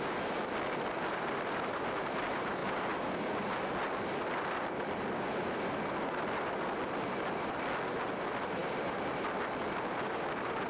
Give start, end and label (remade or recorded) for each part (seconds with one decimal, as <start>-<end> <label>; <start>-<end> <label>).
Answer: 0.0-10.7 recorded